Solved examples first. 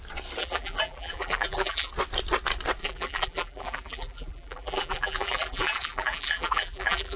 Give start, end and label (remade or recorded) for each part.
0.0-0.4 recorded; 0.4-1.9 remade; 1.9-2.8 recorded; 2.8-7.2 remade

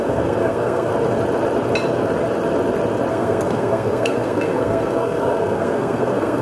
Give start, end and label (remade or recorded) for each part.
0.0-0.9 remade; 0.9-3.1 recorded; 3.1-6.4 remade